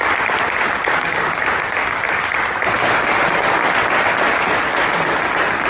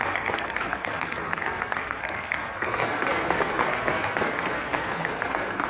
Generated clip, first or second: second